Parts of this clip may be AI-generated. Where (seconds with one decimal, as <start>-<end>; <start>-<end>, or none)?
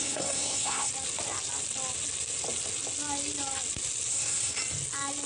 0.0-0.9; 4.1-4.6